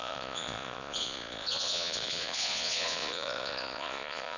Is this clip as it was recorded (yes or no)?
no